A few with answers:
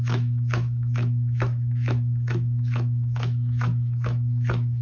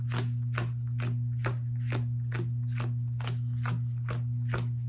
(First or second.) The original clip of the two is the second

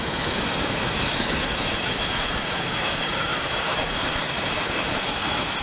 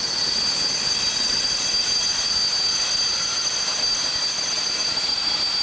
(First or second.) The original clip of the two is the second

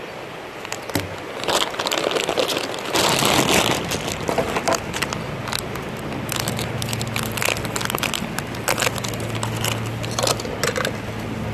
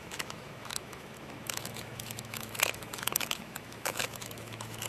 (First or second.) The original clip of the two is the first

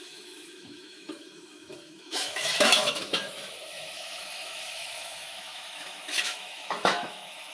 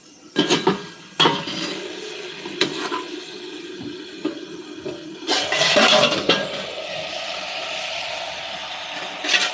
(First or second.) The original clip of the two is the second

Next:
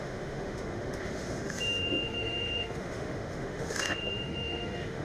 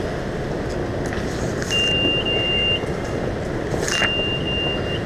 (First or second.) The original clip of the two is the second